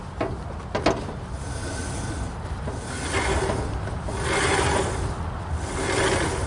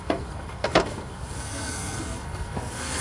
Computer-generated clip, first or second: second